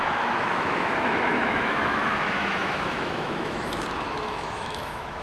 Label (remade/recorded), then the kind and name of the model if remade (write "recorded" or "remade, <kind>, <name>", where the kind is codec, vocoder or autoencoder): remade, autoencoder, DAC-VAE